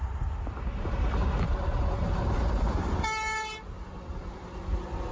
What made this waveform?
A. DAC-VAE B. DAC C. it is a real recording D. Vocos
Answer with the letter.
C